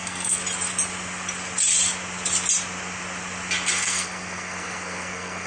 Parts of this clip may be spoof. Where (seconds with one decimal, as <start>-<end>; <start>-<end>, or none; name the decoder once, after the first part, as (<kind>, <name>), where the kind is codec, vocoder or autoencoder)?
0.0-0.4 (codec, SNAC); 3.7-5.5